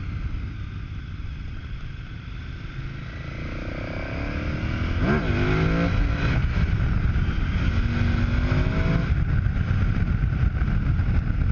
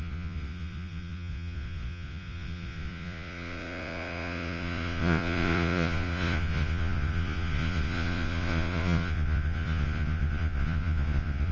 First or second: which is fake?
second